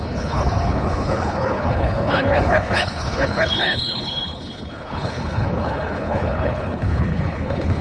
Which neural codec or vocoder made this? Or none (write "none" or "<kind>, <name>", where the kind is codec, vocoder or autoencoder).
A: codec, HILCodec